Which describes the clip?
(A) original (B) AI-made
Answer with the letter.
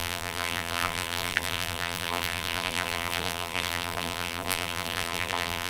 B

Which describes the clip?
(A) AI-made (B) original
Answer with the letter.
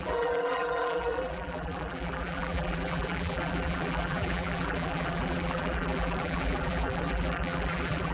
A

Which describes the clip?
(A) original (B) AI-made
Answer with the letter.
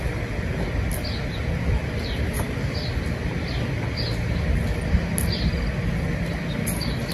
A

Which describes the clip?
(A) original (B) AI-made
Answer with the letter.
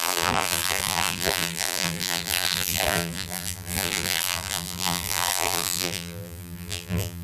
B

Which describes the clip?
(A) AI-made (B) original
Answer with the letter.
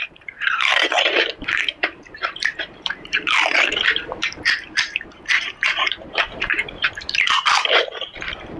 A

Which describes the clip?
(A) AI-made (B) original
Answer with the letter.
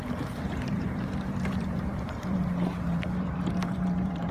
A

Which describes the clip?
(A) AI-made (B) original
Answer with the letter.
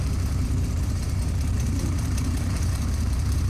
A